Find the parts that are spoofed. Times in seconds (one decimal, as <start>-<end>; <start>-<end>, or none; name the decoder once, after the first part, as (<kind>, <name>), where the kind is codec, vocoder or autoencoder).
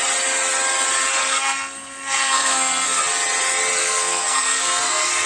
1.2-3.0 (codec, SNAC); 3.8-5.3